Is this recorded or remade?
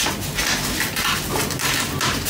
recorded